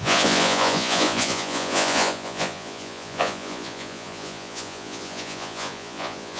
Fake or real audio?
fake